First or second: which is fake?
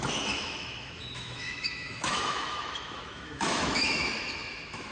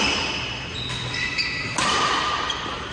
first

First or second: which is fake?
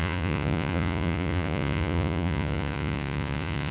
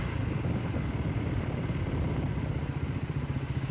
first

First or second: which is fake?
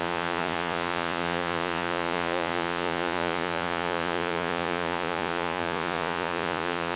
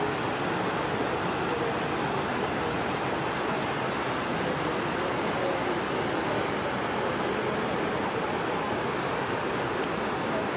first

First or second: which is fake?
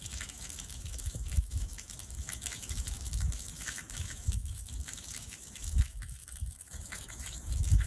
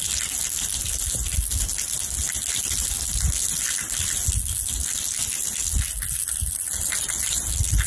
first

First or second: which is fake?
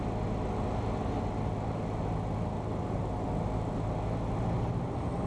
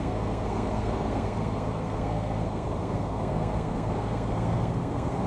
second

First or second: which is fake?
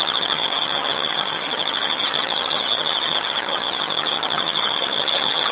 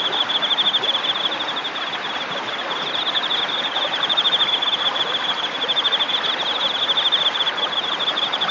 first